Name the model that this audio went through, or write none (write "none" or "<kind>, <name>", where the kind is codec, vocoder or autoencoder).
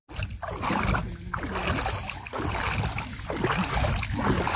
none